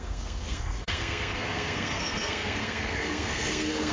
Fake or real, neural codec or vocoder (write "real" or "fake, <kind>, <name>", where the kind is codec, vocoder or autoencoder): fake, codec, SNAC